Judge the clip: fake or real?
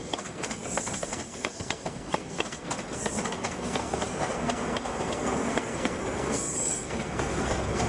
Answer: fake